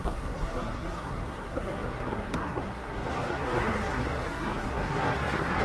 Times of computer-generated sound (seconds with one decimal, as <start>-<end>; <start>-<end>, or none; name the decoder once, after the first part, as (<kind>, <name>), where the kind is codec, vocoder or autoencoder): 0.0-5.6 (codec, SNAC)